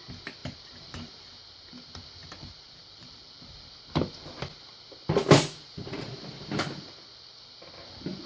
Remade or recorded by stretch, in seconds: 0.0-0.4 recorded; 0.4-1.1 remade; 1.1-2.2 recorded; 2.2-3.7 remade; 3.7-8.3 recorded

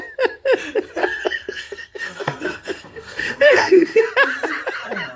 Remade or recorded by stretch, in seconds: 0.0-1.0 recorded; 1.0-4.1 remade; 4.1-5.2 recorded

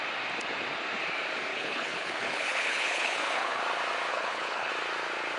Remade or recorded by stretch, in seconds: 0.0-1.5 recorded; 1.5-3.6 remade; 3.6-4.1 recorded; 4.1-4.7 remade; 4.7-5.4 recorded

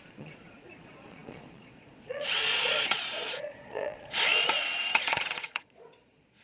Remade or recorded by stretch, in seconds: 0.0-6.4 remade

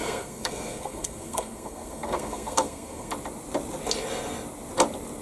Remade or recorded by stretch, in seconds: 0.0-3.1 remade; 3.1-5.2 recorded

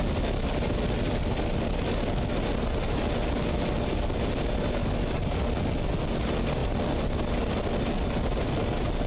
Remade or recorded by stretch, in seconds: 0.0-9.1 recorded